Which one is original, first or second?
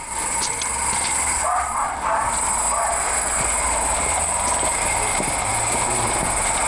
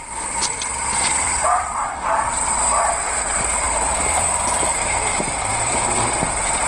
first